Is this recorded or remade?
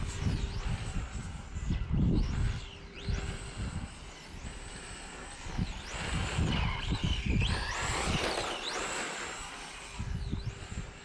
recorded